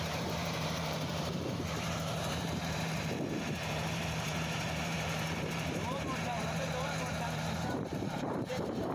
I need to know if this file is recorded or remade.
remade